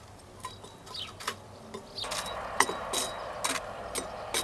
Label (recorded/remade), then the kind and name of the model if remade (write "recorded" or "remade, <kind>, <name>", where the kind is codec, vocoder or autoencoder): recorded